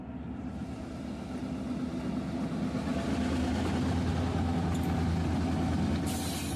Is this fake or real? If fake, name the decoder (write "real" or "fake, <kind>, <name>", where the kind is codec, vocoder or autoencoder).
real